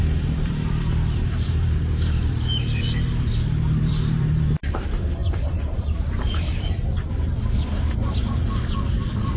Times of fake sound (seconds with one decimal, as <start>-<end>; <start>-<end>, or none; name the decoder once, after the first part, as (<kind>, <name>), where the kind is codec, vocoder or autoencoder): 0.0-9.4 (vocoder, BigVGAN v2)